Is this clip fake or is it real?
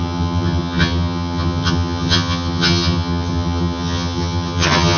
fake